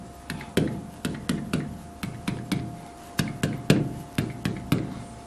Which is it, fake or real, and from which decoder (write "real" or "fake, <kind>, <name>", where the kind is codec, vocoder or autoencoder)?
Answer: real